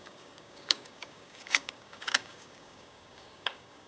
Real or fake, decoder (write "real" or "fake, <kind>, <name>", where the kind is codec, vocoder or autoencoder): fake, codec, DAC